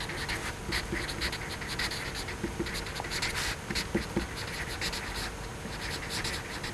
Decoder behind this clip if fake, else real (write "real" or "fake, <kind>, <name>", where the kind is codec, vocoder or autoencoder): real